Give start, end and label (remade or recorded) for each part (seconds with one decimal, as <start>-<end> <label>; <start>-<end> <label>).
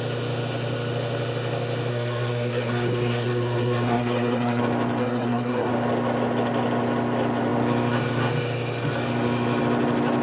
0.0-1.9 recorded; 1.9-4.6 remade; 4.6-5.0 recorded; 5.0-5.7 remade; 5.7-10.2 recorded